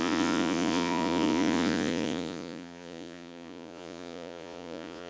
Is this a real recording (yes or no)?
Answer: no